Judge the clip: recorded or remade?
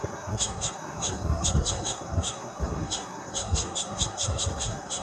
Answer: remade